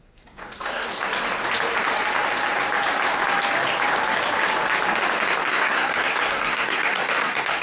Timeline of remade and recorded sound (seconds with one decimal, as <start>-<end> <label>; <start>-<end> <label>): 0.0-0.9 remade; 0.9-5.5 recorded; 5.5-7.6 remade